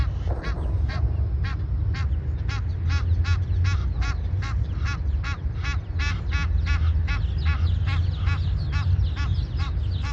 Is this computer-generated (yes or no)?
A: no